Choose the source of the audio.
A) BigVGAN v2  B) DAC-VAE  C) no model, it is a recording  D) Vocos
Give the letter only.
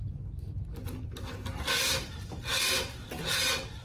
C